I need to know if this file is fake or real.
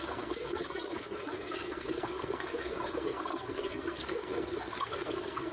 fake